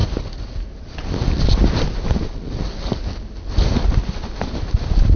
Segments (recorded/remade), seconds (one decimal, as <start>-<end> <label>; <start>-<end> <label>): 0.0-5.2 recorded